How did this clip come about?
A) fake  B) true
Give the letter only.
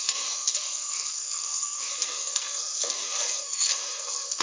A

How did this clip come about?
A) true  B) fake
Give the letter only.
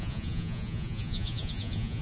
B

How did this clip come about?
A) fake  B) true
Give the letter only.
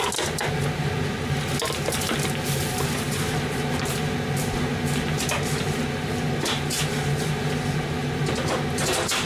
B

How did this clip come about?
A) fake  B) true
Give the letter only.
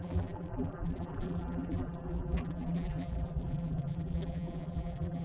A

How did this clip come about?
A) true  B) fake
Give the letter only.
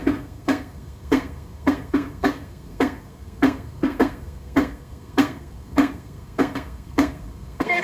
B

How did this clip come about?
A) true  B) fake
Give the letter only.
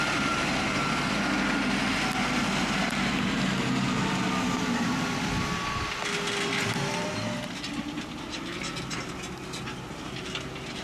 A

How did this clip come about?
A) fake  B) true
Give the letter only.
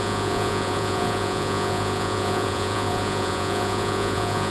A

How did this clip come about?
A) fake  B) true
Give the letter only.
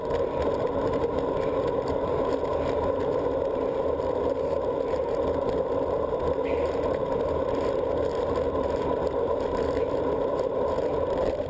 A